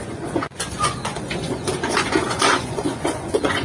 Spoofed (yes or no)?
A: yes